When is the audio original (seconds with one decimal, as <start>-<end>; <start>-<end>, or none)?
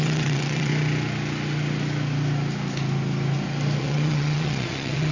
0.7-3.8